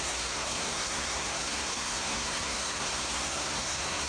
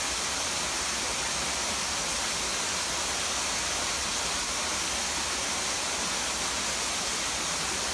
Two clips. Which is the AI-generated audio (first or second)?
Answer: first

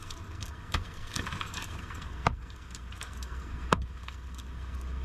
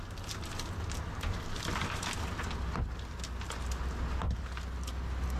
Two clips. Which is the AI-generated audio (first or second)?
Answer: first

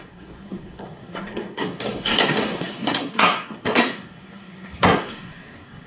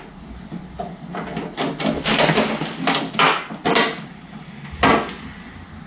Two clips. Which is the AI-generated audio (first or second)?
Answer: first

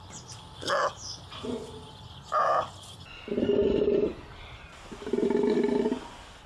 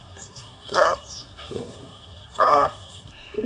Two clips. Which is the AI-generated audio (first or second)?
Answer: second